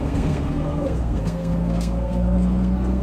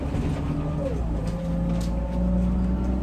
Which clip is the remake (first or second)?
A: first